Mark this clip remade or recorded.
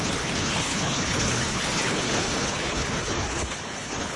remade